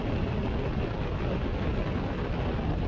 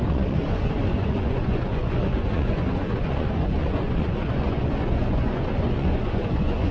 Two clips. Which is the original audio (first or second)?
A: first